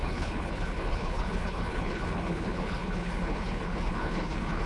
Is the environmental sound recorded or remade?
remade